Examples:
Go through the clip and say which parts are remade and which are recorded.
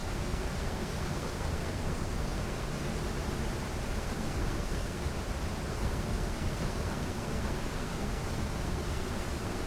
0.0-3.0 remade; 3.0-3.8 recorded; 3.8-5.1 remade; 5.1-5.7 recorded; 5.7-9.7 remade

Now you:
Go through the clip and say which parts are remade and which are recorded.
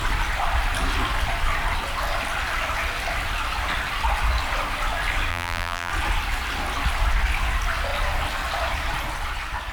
0.0-5.3 recorded; 5.3-5.9 remade; 5.9-9.7 recorded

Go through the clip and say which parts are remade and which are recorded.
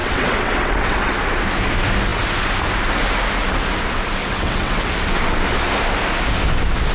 0.0-1.1 remade; 1.1-4.2 recorded; 4.2-4.9 remade; 4.9-6.9 recorded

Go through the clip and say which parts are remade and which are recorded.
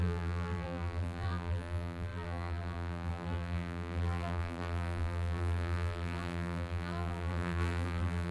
0.0-8.3 remade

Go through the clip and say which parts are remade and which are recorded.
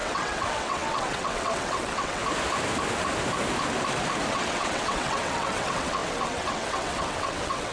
0.0-2.2 remade; 2.2-4.3 recorded; 4.3-7.7 remade